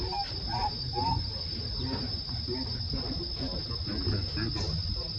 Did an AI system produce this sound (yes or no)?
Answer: no